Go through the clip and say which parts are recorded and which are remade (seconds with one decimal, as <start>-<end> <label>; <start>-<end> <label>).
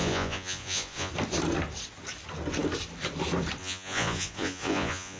0.0-1.1 remade; 1.1-3.6 recorded; 3.6-5.2 remade